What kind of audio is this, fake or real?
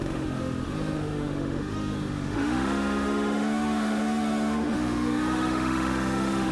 fake